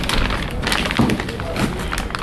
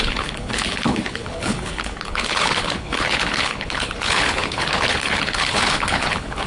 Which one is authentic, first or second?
first